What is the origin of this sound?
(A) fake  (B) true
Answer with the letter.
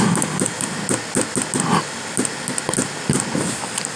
B